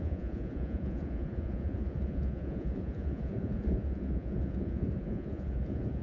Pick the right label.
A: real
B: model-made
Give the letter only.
B